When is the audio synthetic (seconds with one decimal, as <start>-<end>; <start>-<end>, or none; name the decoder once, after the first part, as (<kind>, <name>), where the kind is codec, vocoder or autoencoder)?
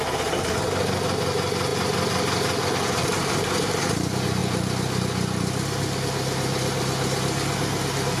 3.0-3.7 (vocoder, BigVGAN v2)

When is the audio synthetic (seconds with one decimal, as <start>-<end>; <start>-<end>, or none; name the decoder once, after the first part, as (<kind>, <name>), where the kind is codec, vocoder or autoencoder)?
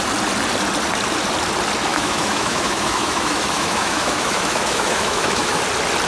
1.9-5.6 (autoencoder, DAC-VAE)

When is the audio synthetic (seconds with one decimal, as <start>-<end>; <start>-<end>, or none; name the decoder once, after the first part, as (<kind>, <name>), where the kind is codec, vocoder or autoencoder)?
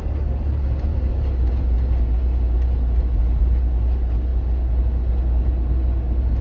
0.9-1.5 (vocoder, BigVGAN v2)